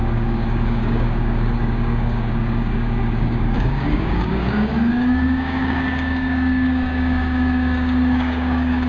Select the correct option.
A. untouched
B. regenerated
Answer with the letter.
B